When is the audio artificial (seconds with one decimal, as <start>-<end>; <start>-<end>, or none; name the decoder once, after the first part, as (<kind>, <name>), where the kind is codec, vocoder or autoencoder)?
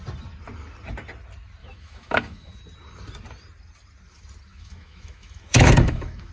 1.6-2.5 (autoencoder, DAC-VAE); 4.5-6.3